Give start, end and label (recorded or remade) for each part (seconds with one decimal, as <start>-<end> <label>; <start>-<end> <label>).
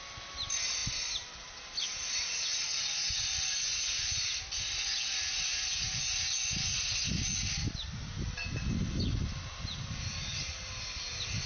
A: 0.0-11.5 recorded